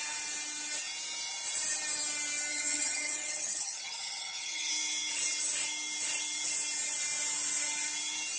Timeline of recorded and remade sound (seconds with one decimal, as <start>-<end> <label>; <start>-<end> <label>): 0.0-2.5 recorded; 2.5-4.7 remade; 4.7-8.4 recorded